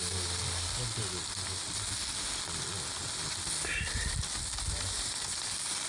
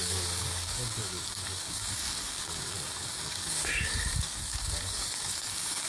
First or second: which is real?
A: first